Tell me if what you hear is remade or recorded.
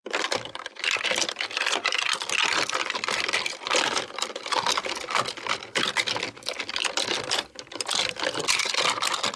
recorded